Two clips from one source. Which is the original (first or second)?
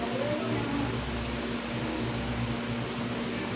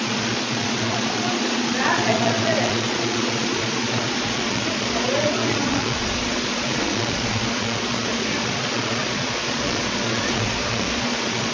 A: first